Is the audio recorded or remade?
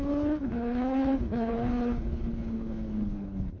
remade